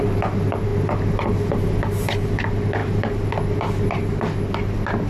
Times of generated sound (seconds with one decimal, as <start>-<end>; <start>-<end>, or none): none